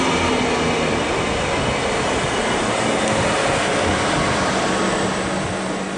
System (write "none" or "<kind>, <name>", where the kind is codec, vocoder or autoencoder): none